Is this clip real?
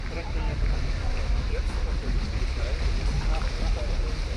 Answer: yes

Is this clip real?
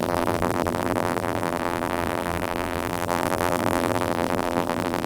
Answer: no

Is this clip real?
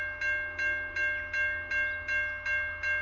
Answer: yes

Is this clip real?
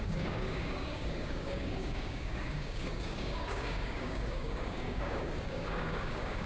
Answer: no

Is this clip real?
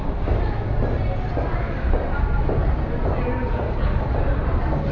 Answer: yes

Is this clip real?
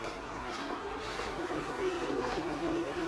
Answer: no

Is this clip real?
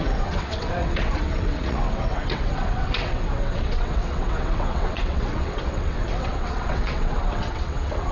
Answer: no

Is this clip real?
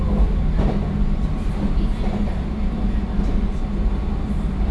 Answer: yes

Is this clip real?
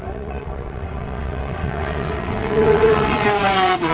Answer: no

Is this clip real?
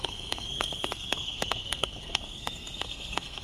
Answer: no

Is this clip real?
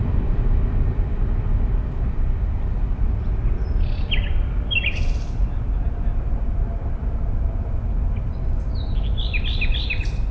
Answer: yes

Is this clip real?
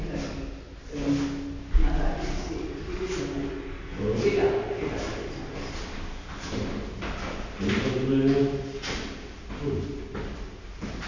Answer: yes